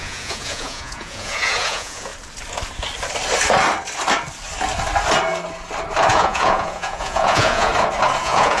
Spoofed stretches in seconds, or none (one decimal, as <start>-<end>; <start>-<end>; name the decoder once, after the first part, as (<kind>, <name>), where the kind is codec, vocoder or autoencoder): 0.0-2.1 (vocoder, Vocos); 6.1-7.7; 8.2-8.6

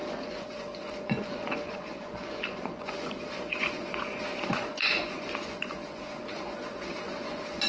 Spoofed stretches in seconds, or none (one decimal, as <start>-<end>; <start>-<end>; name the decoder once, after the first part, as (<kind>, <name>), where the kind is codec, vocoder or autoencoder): 0.0-7.7 (vocoder, Vocos)

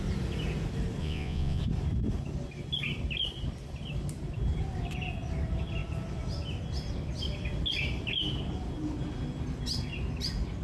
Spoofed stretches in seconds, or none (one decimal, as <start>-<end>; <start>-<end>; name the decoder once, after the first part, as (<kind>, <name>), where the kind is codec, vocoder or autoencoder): 1.0-1.6 (vocoder, Vocos)

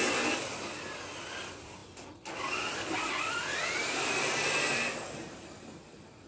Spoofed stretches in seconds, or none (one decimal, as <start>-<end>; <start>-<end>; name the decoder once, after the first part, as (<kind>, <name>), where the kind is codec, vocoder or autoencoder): none

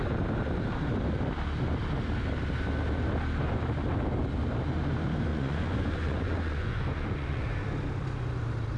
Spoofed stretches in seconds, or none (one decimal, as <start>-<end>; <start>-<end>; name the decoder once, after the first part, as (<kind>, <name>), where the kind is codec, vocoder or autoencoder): 5.3-7.4 (vocoder, Vocos)

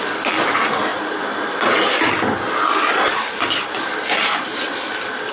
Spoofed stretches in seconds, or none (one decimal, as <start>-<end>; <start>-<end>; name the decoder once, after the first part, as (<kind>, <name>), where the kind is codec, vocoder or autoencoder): none

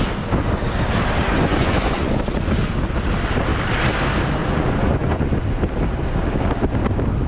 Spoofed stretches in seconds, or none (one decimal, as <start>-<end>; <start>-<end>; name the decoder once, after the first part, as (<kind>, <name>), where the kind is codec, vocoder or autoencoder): 1.4-2.2 (vocoder, Vocos); 4.4-5.4